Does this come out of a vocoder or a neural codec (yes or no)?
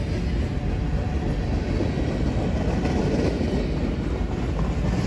no